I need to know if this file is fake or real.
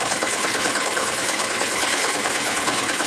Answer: fake